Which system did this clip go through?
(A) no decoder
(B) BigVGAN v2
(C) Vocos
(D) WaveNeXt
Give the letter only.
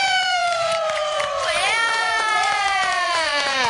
C